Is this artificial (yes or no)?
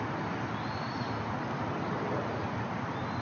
no